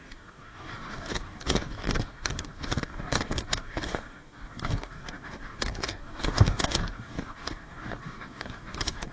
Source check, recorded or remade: remade